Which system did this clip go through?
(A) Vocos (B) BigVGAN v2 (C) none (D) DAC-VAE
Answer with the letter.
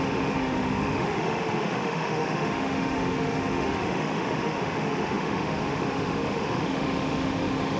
D